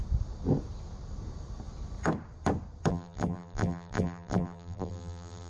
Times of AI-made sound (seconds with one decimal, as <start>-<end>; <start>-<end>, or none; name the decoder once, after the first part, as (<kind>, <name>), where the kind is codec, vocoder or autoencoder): 2.9-5.5 (vocoder, BigVGAN v2)